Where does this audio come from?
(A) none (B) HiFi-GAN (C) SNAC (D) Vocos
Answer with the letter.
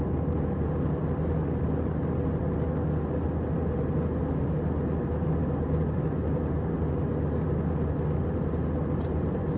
A